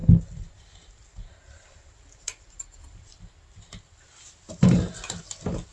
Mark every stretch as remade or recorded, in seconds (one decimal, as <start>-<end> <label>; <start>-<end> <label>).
0.0-5.7 recorded

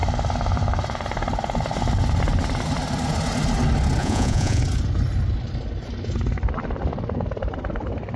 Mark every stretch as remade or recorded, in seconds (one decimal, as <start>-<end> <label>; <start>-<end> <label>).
0.0-4.0 recorded; 4.0-4.6 remade; 4.6-8.2 recorded

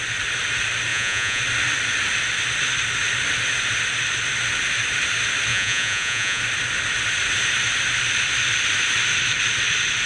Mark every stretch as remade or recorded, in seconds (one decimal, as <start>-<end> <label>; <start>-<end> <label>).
0.0-0.9 recorded; 0.9-1.4 remade; 1.4-5.5 recorded; 5.5-6.4 remade; 6.4-10.1 recorded

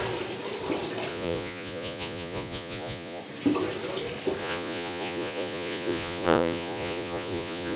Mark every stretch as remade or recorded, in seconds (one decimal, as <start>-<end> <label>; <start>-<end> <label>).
0.0-1.1 recorded; 1.1-3.2 remade; 3.2-4.4 recorded; 4.4-7.8 remade